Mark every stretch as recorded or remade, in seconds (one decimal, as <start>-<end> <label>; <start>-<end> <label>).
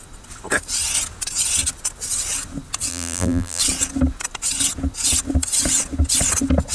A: 0.0-2.9 recorded; 2.9-3.6 remade; 3.6-6.7 recorded